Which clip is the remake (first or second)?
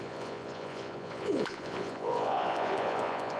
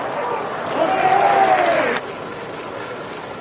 first